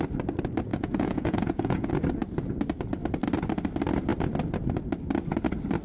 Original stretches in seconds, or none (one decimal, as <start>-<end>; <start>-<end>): 0.0-0.7; 1.9-5.8